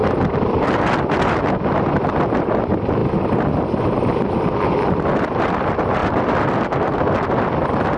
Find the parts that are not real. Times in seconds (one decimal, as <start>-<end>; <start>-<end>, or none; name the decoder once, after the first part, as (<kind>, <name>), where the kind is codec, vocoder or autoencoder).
none